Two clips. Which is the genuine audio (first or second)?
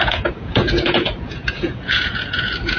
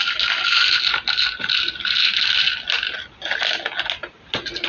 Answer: second